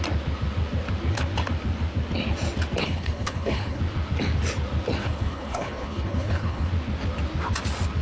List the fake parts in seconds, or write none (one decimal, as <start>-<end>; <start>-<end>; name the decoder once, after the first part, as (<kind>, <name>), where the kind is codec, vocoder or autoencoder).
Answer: 2.8-3.8 (codec, HILCodec); 5.0-6.7